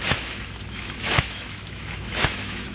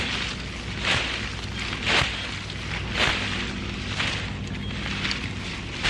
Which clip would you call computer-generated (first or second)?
first